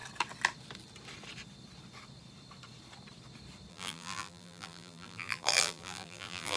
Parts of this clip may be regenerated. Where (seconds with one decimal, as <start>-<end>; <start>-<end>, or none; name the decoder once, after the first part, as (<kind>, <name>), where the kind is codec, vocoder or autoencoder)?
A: 3.7-6.6 (vocoder, BigVGAN v2)